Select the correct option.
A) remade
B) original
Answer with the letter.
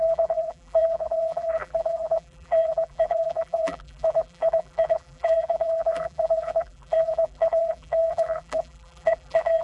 A